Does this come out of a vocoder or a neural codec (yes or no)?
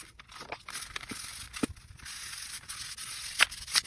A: no